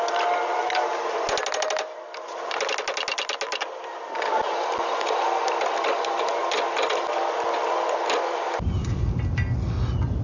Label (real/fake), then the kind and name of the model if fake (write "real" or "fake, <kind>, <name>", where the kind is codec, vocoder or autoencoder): real